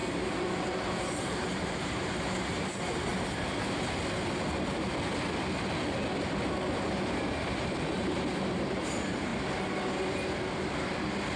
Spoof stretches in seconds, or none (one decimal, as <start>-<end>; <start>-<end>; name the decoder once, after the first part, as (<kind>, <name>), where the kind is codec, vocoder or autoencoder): 0.0-3.1 (vocoder, BigVGAN v2); 7.4-9.3